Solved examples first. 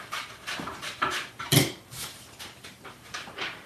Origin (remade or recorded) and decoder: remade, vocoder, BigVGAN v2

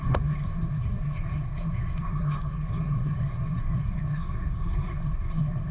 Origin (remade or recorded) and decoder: remade, codec, SNAC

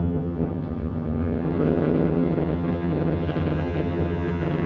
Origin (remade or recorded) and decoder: remade, vocoder, HiFi-GAN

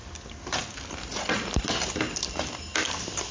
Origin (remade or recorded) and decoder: recorded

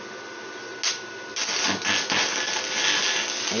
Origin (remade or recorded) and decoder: recorded